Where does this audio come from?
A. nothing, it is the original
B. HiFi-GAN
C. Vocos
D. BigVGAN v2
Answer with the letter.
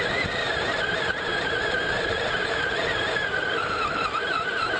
D